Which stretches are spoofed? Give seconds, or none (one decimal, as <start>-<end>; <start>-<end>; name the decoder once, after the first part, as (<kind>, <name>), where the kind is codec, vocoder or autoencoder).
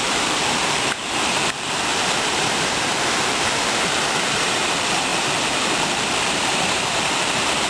0.0-7.7 (vocoder, BigVGAN v2)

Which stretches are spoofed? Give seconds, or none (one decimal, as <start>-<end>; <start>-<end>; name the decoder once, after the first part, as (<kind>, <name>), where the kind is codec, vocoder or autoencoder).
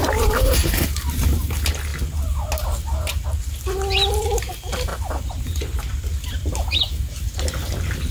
0.0-0.5 (vocoder, BigVGAN v2); 4.9-5.6